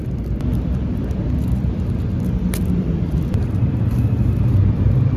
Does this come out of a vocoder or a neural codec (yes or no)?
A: yes